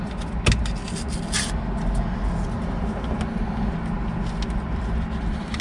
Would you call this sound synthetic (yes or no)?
no